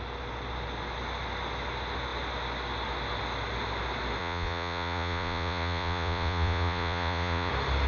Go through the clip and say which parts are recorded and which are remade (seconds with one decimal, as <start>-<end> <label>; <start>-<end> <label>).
0.0-4.2 recorded; 4.2-7.5 remade; 7.5-7.9 recorded